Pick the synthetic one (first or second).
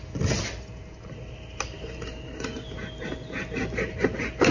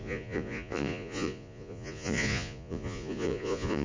second